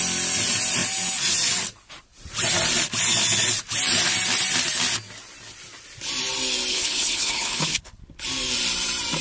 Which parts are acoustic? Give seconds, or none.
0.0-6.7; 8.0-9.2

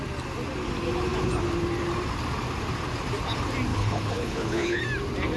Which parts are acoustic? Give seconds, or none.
0.0-3.7; 4.8-5.4